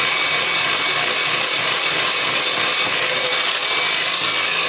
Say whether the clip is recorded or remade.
recorded